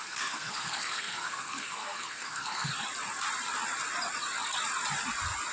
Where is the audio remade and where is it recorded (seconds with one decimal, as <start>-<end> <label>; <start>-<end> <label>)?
0.0-2.7 remade; 2.7-5.5 recorded